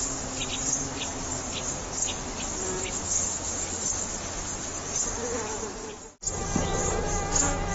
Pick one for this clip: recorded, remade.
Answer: recorded